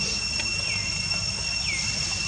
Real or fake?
real